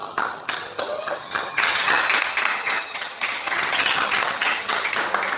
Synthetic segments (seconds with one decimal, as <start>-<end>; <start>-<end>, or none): 0.0-2.0; 2.5-4.9